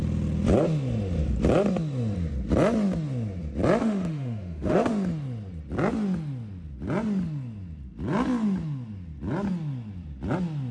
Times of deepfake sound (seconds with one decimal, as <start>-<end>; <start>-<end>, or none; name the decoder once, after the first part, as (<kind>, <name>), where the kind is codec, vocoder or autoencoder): 3.8-4.9 (autoencoder, DAC-VAE)

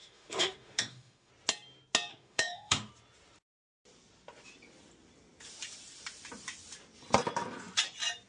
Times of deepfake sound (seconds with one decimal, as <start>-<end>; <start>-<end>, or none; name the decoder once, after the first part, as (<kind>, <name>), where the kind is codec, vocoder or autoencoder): 0.0-1.3 (autoencoder, DAC-VAE); 2.1-2.9